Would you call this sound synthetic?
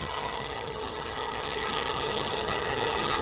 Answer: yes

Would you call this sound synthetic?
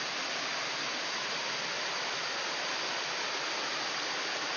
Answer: no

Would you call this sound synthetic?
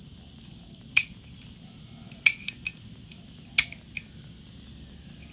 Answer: no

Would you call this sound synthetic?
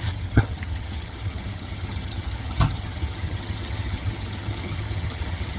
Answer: yes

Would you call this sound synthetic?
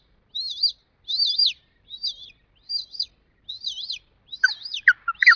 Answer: no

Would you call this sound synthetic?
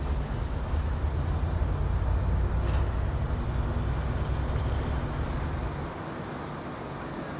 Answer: no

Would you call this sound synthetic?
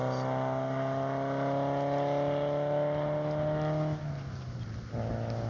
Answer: no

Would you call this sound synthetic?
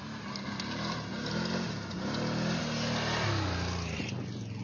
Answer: no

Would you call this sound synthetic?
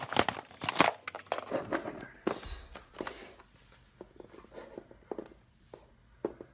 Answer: no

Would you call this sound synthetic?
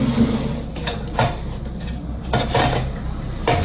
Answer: no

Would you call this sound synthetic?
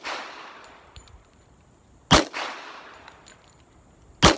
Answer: no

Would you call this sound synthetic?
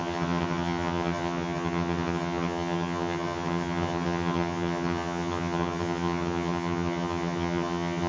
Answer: yes